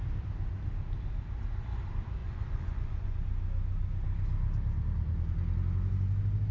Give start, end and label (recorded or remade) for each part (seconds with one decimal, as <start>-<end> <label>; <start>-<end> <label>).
0.0-2.2 recorded; 2.2-3.2 remade; 3.2-6.5 recorded